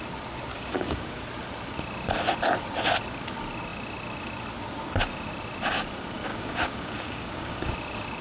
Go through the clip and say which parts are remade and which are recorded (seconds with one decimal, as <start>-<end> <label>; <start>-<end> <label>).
0.0-0.5 recorded; 0.5-1.2 remade; 1.2-6.3 recorded; 6.3-7.7 remade; 7.7-8.2 recorded

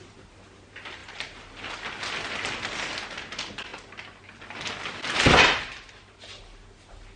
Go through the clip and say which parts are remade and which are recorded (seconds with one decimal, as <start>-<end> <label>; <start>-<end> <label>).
0.0-7.2 recorded